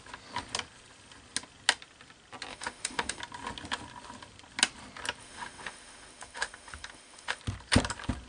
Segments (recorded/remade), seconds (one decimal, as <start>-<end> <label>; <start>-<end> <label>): 0.0-2.5 recorded; 2.5-3.2 remade; 3.2-5.2 recorded; 5.2-7.4 remade; 7.4-8.3 recorded